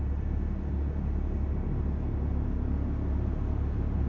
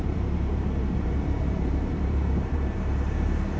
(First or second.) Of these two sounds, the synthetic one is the second